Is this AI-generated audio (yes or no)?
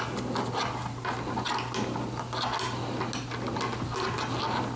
no